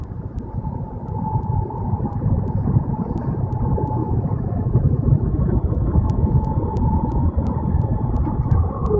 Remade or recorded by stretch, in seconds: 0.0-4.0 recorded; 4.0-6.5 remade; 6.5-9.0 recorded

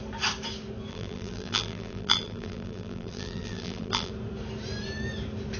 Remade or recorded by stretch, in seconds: 0.0-0.9 recorded; 0.9-4.1 remade; 4.1-5.6 recorded

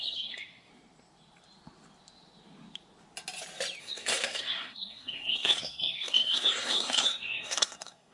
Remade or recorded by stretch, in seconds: 0.0-0.7 remade; 0.7-3.8 recorded; 3.8-8.1 remade

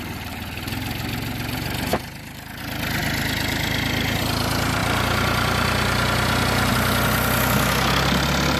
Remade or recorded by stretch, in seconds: 0.0-8.6 recorded